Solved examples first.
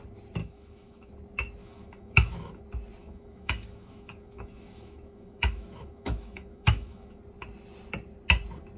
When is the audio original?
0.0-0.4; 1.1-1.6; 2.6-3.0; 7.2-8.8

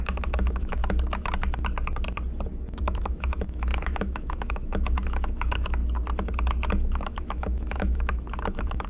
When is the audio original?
0.8-2.5; 5.8-6.7

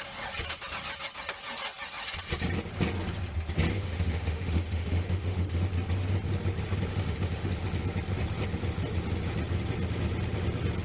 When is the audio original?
0.0-3.7; 5.6-6.9; 7.5-10.8

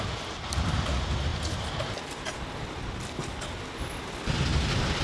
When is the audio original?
0.0-5.0

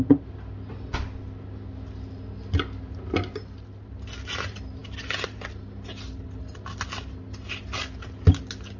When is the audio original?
0.0-8.8

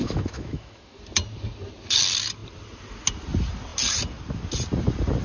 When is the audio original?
1.0-5.2